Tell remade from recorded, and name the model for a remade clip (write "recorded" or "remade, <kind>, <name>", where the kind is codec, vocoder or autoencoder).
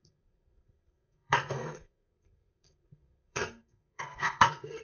remade, codec, SNAC